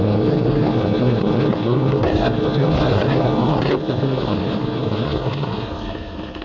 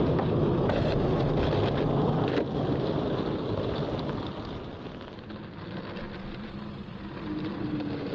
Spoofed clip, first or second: first